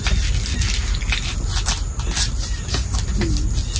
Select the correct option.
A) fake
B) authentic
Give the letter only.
B